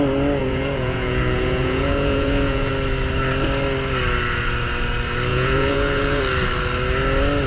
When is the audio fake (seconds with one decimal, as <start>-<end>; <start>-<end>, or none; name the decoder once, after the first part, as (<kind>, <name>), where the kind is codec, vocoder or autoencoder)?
0.4-2.7 (vocoder, Vocos); 5.3-6.2